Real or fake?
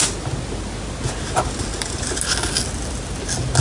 real